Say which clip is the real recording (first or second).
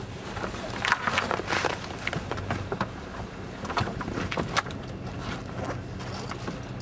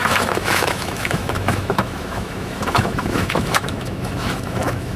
first